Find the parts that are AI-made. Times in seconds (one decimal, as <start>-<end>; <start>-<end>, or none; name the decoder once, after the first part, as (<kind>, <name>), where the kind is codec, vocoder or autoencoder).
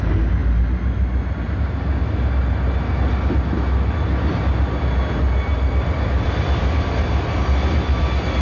5.5-8.4 (vocoder, BigVGAN v2)